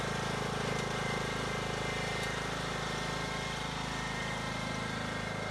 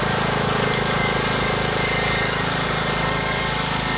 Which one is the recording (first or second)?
first